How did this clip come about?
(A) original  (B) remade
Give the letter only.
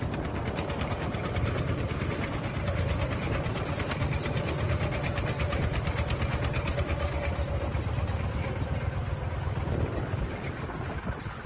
A